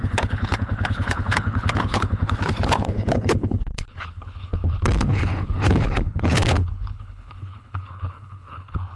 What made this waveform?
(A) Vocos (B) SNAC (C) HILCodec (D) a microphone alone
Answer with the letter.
C